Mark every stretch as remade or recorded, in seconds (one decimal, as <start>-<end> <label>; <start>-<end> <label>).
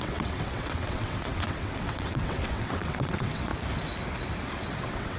0.0-3.5 remade; 3.5-4.8 recorded; 4.8-5.2 remade